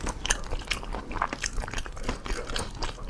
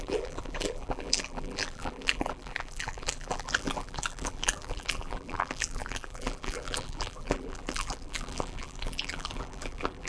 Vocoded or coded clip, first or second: second